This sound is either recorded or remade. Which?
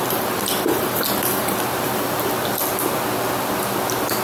recorded